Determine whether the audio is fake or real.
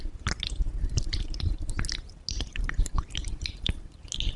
real